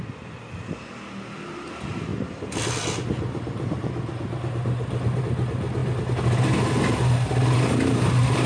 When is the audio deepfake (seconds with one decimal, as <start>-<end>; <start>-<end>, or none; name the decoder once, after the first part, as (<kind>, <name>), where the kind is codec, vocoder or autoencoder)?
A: none